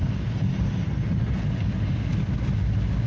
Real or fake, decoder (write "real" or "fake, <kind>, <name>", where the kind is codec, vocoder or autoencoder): real